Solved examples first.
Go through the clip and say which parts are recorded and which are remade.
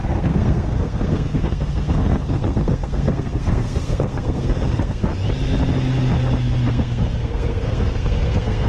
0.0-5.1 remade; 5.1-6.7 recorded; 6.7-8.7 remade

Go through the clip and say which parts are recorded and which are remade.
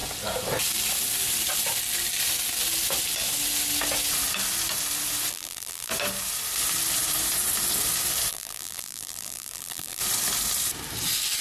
0.0-5.3 recorded; 5.3-5.9 remade; 5.9-8.3 recorded; 8.3-10.0 remade; 10.0-11.4 recorded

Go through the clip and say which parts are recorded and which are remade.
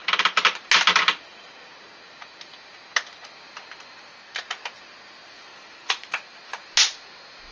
0.0-5.5 recorded; 5.5-6.1 remade; 6.1-7.5 recorded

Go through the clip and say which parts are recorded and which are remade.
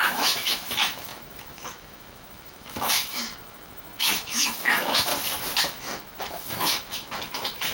0.0-5.1 remade; 5.1-5.6 recorded; 5.6-7.7 remade